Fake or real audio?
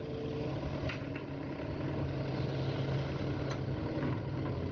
real